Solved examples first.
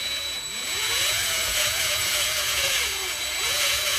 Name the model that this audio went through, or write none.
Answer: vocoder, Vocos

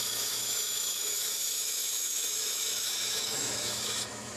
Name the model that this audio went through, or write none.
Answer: autoencoder, DAC-VAE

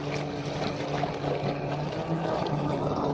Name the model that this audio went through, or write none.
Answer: none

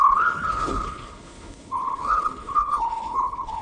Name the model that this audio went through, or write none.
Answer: codec, HILCodec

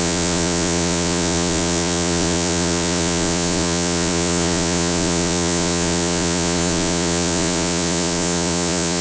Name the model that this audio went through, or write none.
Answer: vocoder, Vocos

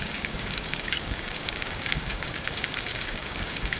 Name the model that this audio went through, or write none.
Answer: codec, DAC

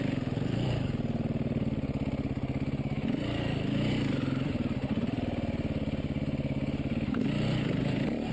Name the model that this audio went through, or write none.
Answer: vocoder, BigVGAN v2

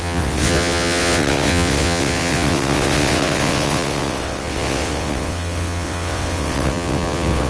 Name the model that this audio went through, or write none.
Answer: vocoder, WaveNeXt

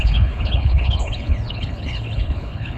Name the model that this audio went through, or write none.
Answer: codec, HILCodec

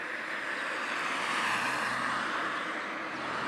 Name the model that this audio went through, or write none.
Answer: none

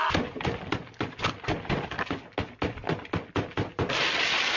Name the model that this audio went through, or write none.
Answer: none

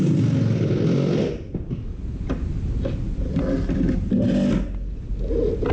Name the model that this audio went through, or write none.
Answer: none